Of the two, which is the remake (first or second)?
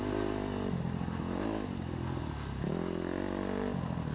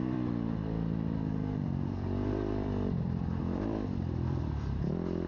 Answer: second